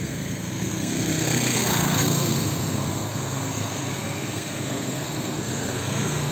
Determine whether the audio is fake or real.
fake